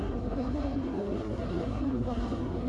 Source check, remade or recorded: remade